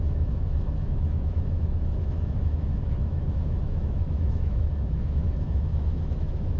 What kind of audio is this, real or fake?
fake